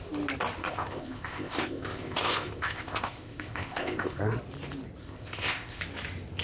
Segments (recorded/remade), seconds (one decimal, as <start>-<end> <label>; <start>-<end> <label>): 0.0-0.6 recorded; 0.6-4.2 remade; 4.2-5.0 recorded; 5.0-5.8 remade; 5.8-6.4 recorded